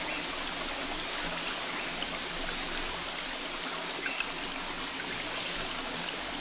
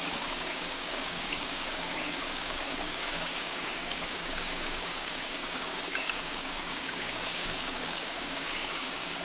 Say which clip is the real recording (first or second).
first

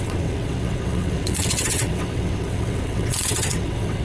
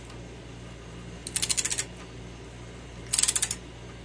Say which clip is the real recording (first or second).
second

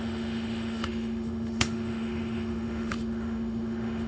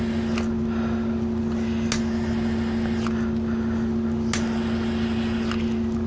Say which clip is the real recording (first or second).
second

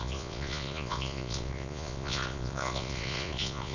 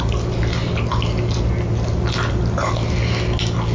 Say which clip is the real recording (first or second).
second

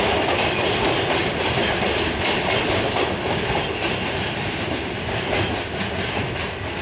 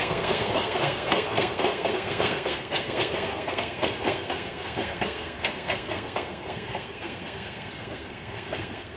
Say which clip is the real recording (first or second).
first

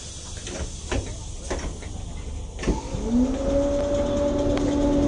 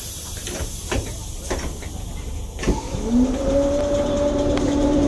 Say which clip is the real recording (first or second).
first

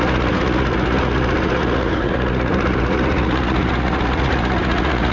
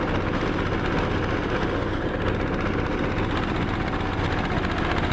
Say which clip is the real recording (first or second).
second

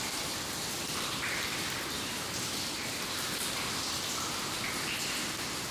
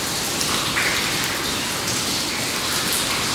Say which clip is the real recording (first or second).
second